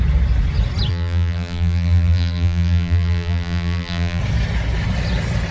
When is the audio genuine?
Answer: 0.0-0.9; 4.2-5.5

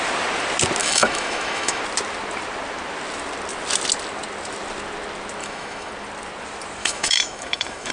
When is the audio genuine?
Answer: 0.0-0.8; 1.8-5.4; 5.9-6.8

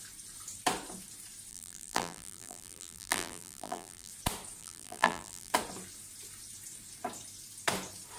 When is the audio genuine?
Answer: 0.0-1.5; 4.1-4.6; 5.5-8.2

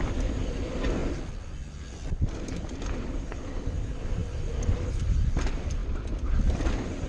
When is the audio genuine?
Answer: 1.0-2.1